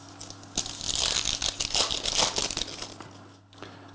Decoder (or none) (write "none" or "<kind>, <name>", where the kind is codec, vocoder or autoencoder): none